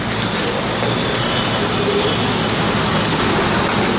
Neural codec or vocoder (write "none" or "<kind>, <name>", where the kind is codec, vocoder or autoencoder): none